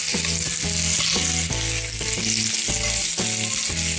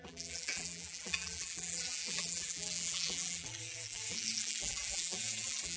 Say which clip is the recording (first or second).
first